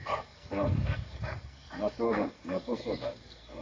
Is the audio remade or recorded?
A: remade